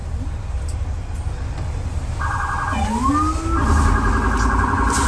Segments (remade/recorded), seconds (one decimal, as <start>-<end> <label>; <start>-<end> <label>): 0.0-5.1 recorded